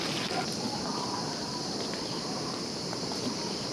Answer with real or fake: real